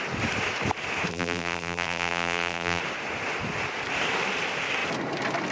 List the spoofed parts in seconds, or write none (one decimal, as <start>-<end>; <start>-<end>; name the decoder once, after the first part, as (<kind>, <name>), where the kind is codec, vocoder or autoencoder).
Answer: 1.1-2.8 (vocoder, BigVGAN v2)